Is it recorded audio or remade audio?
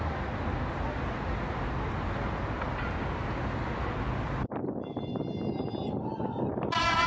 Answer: recorded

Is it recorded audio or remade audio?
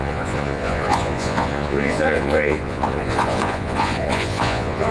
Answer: remade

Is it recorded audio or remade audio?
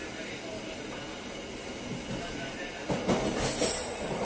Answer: recorded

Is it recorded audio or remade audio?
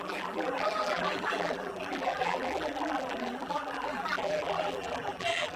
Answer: remade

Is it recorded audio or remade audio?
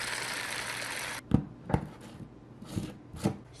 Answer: recorded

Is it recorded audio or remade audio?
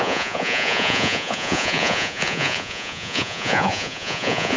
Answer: remade